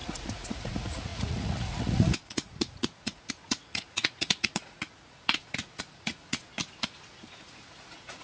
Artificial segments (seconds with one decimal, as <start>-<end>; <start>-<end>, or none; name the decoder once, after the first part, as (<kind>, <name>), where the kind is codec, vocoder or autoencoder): 0.0-6.5 (vocoder, Vocos); 7.4-8.2